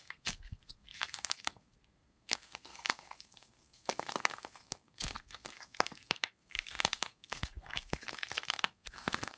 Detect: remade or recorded remade